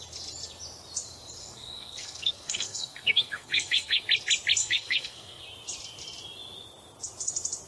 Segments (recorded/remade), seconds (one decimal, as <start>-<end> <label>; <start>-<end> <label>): 0.0-1.4 recorded; 1.4-4.0 remade; 4.0-4.6 recorded; 4.6-5.4 remade; 5.4-7.7 recorded